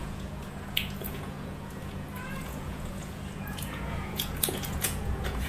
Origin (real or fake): fake